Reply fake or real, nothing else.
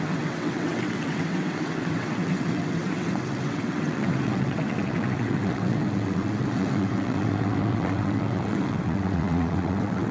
fake